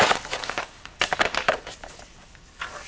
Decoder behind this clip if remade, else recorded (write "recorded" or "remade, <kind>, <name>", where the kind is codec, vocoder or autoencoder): remade, codec, DAC